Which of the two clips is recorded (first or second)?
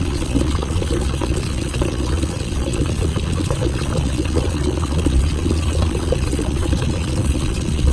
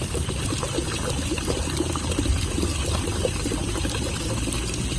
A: second